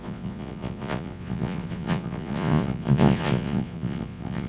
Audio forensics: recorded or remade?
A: remade